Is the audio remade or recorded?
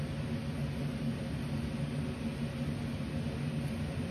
recorded